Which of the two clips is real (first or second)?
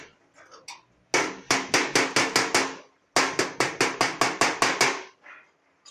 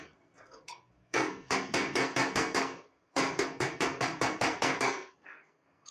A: first